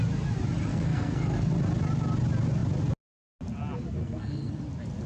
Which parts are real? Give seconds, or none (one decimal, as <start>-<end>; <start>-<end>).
0.0-0.7; 1.5-4.0; 4.6-5.1